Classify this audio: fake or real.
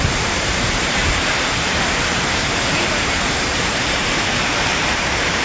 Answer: fake